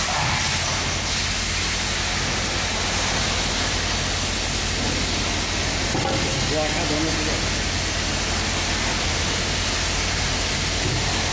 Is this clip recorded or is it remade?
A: recorded